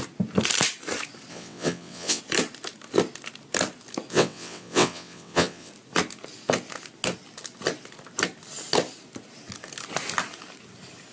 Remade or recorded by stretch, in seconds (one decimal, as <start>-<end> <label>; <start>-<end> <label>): 0.0-1.3 recorded; 1.3-2.2 remade; 2.2-4.1 recorded; 4.1-5.7 remade; 5.7-11.1 recorded